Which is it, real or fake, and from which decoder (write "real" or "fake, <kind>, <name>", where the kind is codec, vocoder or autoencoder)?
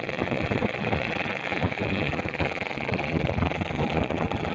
fake, vocoder, Vocos